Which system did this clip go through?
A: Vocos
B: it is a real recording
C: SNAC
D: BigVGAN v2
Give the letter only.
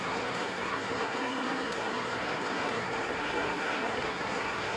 C